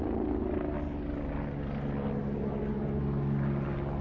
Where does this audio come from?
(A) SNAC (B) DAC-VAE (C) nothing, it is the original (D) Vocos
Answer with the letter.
C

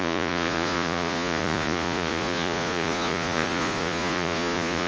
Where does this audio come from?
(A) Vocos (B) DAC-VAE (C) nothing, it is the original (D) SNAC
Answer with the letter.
A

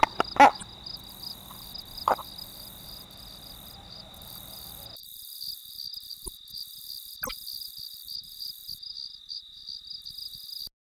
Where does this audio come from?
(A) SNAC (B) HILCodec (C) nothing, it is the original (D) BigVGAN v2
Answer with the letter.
C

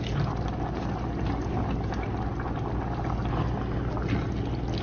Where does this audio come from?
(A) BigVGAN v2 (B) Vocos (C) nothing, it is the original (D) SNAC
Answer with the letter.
C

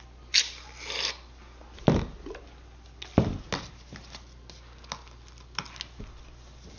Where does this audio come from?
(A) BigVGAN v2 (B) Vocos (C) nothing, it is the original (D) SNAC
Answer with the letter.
C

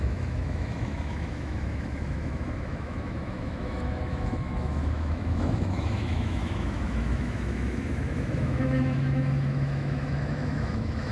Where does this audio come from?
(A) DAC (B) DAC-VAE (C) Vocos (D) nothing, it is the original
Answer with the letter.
B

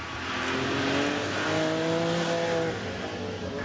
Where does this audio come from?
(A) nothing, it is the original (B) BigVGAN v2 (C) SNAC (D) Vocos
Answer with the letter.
A